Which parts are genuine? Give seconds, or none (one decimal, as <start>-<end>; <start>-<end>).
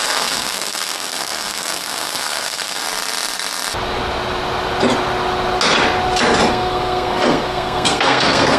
2.8-6.5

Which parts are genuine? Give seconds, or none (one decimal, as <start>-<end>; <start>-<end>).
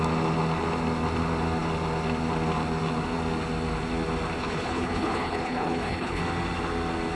0.0-4.4; 6.2-7.2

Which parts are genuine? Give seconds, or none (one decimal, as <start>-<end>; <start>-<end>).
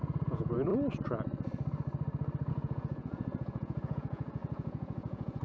0.7-2.5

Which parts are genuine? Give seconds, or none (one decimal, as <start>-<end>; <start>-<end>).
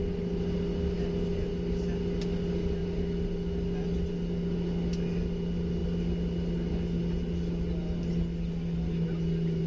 0.0-9.7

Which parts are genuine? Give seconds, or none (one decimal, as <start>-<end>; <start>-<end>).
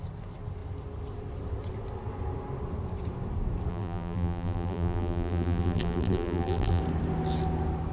0.0-3.7; 6.8-7.9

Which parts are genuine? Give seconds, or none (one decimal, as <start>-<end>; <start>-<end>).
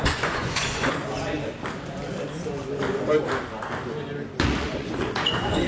1.0-4.4